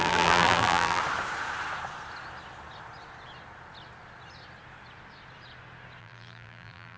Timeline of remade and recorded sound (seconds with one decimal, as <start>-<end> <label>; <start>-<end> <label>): 0.0-1.0 remade; 1.0-6.0 recorded; 6.0-7.0 remade